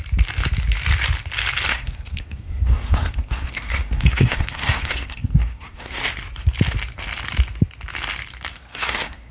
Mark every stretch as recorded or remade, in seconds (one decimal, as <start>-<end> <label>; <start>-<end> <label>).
0.0-1.7 recorded; 1.7-6.0 remade; 6.0-8.5 recorded; 8.5-9.3 remade